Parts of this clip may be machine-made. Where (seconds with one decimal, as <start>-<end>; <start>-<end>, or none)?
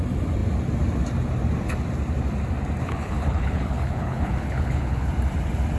2.8-5.1